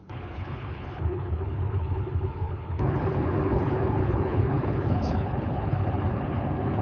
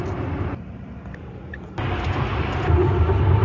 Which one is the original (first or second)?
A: second